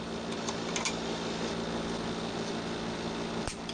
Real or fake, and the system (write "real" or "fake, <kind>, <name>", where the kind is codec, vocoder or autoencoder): real